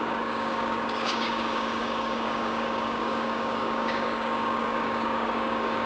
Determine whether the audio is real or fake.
fake